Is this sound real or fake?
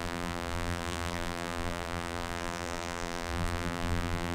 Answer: fake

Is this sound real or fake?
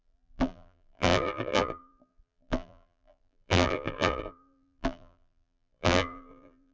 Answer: fake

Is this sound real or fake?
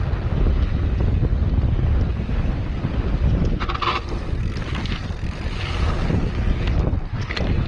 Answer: real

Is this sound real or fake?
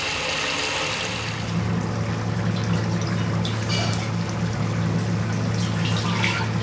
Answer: real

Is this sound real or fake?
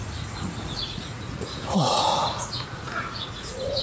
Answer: fake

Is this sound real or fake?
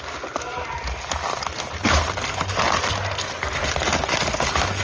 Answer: real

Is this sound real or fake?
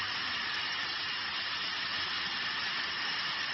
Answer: real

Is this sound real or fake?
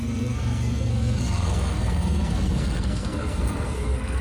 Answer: fake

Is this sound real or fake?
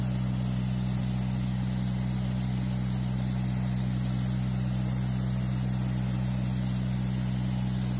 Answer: real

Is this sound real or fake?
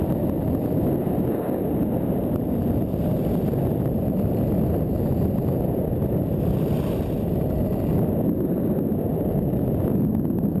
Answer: real